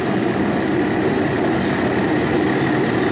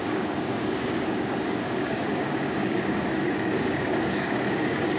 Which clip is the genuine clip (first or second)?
first